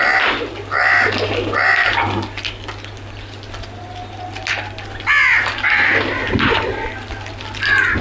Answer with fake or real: real